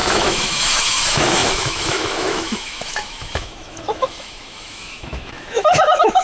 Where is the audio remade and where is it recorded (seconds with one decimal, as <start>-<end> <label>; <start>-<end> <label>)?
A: 0.0-6.2 remade